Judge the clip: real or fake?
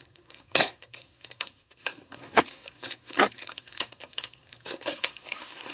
fake